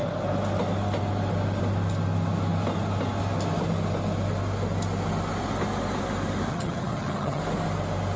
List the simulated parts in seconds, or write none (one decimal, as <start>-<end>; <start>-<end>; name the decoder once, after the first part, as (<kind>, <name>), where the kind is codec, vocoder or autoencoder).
6.5-7.4 (vocoder, HiFi-GAN)